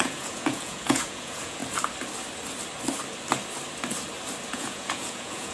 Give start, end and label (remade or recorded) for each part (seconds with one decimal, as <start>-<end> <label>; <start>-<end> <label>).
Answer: 0.0-1.6 remade; 1.6-4.5 recorded; 4.5-5.5 remade